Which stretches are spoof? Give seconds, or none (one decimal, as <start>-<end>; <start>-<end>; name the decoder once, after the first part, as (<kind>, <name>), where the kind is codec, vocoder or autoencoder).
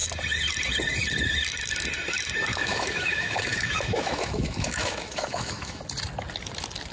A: 2.5-5.8 (autoencoder, DAC-VAE)